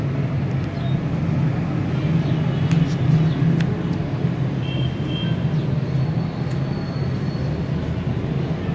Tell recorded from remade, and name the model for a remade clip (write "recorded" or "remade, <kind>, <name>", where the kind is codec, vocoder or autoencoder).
recorded